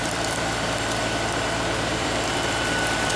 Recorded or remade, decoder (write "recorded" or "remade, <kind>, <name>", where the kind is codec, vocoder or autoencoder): remade, vocoder, BigVGAN v2